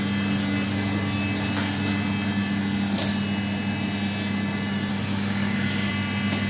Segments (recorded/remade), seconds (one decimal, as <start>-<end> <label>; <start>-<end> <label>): 0.0-4.9 recorded; 4.9-5.9 remade; 5.9-6.5 recorded